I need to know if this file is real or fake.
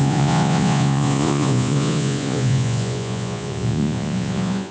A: fake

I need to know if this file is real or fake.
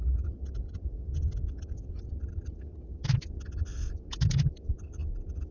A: real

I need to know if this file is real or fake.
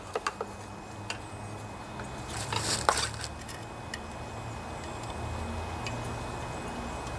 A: real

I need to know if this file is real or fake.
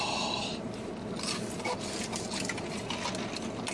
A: real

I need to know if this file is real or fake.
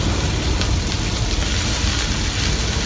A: real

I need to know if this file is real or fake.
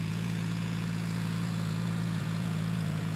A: fake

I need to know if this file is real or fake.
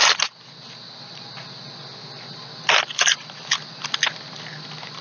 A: real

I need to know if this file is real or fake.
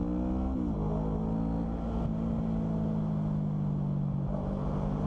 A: real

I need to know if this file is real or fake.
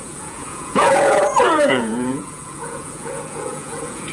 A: fake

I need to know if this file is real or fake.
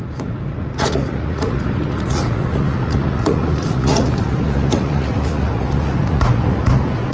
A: fake